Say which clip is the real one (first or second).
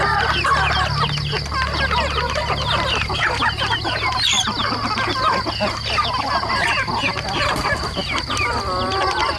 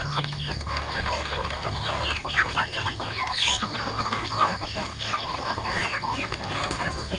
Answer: first